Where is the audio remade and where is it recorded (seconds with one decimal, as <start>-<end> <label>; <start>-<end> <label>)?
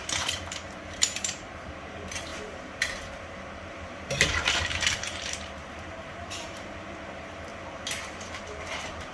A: 0.0-9.1 remade